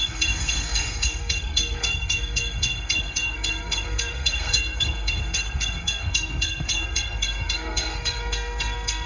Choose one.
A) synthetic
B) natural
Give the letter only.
A